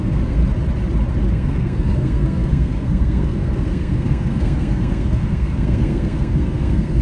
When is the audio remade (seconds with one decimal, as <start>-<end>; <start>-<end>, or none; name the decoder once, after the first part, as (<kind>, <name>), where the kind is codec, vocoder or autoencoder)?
0.0-0.4 (codec, SNAC); 1.3-7.0